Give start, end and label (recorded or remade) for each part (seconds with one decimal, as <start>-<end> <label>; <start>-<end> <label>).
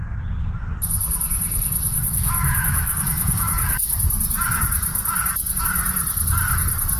0.0-1.9 recorded; 1.9-3.9 remade; 3.9-7.0 recorded